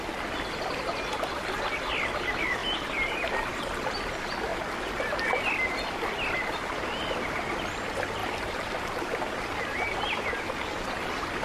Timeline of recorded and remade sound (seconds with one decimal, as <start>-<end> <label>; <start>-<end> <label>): 0.0-2.6 recorded; 2.6-4.1 remade; 4.1-8.2 recorded; 8.2-10.3 remade; 10.3-11.4 recorded